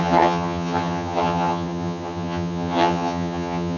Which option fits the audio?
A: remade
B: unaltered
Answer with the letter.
A